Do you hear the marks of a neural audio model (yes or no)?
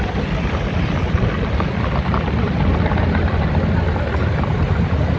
no